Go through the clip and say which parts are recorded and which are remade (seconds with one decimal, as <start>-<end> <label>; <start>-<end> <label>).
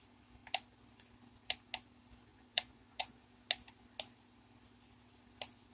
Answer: 0.0-2.3 recorded; 2.3-3.2 remade; 3.2-5.7 recorded